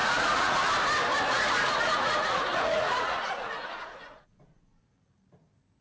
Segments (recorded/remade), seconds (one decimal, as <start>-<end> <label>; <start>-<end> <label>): 0.0-0.7 remade; 0.7-1.3 recorded; 1.3-4.8 remade; 4.8-5.8 recorded